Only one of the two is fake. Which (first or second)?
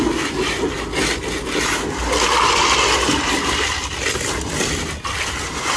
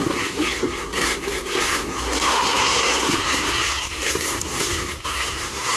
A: second